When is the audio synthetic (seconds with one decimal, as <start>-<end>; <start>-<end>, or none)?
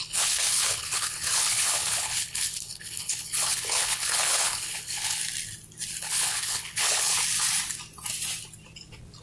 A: 0.0-5.2; 6.0-7.1